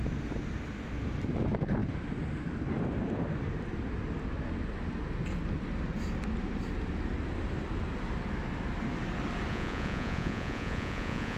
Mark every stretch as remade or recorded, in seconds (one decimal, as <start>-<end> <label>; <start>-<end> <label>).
0.0-9.5 recorded; 9.5-11.4 remade